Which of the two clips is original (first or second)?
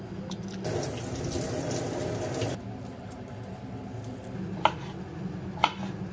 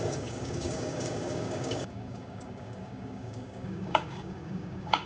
first